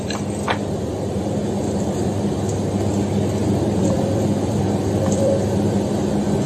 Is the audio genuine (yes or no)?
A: no